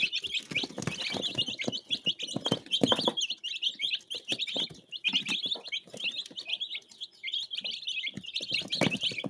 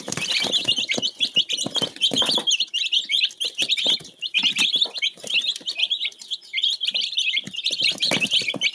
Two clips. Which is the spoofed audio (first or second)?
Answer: second